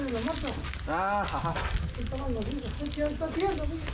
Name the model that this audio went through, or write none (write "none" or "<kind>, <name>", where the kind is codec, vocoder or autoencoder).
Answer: none